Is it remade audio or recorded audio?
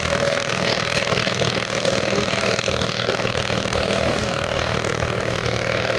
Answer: remade